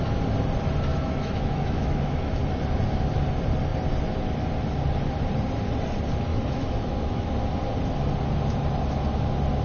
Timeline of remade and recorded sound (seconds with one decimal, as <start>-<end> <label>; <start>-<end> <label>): 0.0-0.9 recorded; 0.9-2.3 remade; 2.3-6.3 recorded; 6.3-7.3 remade; 7.3-9.6 recorded